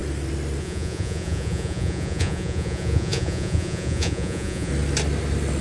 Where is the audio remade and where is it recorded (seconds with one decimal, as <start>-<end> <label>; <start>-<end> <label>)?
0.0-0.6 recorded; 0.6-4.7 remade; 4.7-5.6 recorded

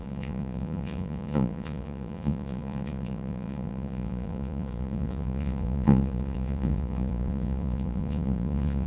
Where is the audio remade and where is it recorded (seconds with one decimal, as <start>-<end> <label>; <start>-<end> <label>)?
0.0-8.9 remade

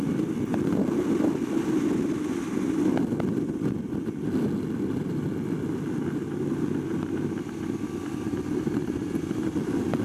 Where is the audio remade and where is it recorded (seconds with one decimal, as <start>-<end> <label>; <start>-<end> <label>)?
0.0-10.0 recorded

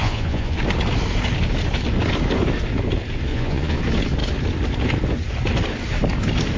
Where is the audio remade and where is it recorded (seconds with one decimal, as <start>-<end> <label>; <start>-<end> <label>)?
0.0-0.6 remade; 0.6-3.3 recorded; 3.3-3.8 remade; 3.8-6.6 recorded

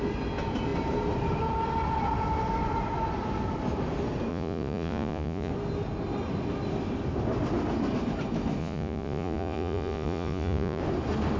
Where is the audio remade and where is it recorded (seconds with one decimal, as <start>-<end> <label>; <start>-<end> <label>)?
0.0-4.3 recorded; 4.3-5.5 remade; 5.5-8.6 recorded; 8.6-10.8 remade; 10.8-11.4 recorded